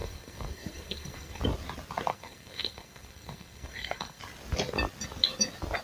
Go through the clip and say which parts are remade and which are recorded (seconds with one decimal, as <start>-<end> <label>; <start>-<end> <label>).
0.0-1.4 remade; 1.4-2.1 recorded; 2.1-4.2 remade; 4.2-5.8 recorded